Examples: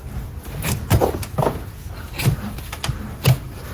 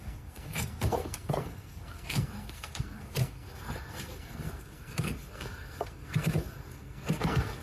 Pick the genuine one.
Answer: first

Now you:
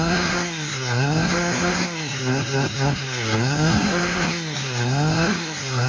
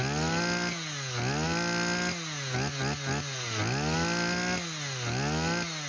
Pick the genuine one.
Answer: second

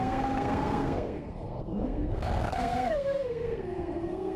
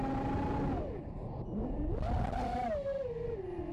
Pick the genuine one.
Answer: second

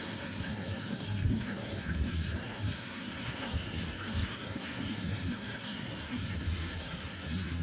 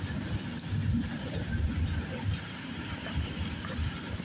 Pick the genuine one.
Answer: second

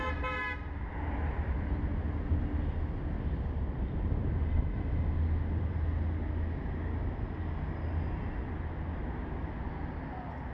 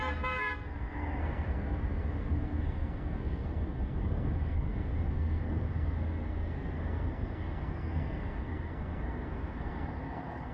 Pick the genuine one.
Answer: first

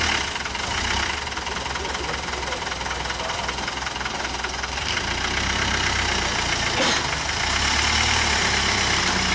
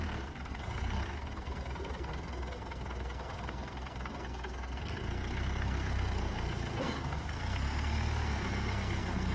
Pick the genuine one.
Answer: first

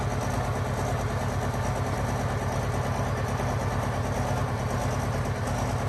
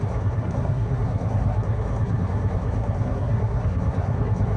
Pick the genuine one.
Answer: first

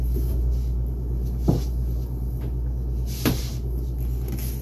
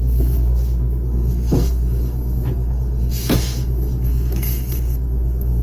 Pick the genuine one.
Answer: first